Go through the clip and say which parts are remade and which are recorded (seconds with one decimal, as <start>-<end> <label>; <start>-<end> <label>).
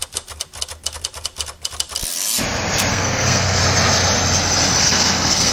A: 0.0-2.9 recorded; 2.9-3.6 remade; 3.6-4.8 recorded; 4.8-5.5 remade